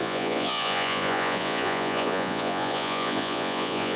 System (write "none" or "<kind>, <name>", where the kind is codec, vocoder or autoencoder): vocoder, Vocos